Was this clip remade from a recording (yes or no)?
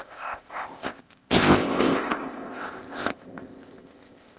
yes